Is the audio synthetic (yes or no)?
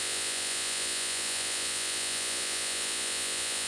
yes